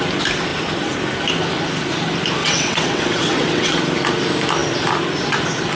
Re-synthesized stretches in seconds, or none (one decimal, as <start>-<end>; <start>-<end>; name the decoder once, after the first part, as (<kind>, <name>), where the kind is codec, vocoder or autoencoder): 2.4-3.8 (vocoder, WaveNeXt)